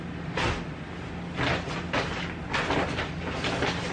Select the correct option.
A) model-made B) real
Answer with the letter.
B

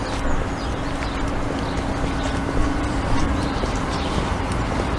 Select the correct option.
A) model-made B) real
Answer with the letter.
B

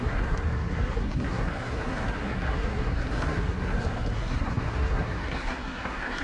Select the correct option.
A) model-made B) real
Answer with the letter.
A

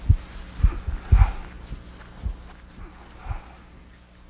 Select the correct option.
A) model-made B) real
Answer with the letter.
B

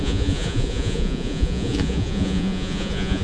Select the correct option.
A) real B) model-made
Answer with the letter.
B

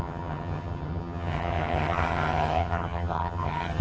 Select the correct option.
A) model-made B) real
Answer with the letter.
A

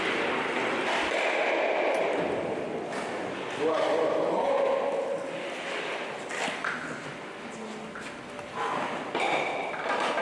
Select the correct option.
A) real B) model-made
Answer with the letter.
A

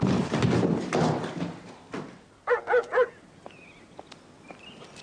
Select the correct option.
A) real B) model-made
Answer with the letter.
A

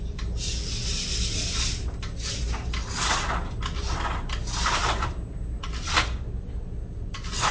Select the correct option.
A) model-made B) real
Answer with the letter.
B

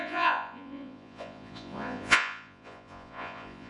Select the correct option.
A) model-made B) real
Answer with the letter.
A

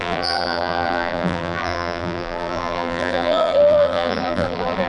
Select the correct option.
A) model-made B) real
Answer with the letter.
A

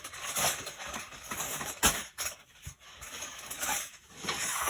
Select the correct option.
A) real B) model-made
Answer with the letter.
B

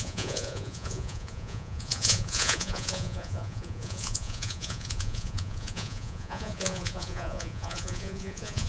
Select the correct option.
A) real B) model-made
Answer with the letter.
B